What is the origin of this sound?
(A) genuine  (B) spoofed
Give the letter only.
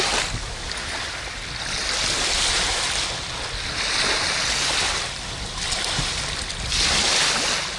A